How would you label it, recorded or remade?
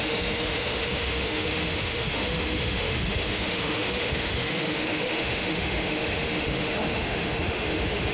remade